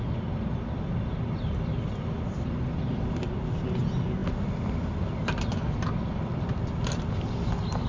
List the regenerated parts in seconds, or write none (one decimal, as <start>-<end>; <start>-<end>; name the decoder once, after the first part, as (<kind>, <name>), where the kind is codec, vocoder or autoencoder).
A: none